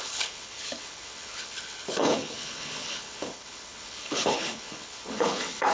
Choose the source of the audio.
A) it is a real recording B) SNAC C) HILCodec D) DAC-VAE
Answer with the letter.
C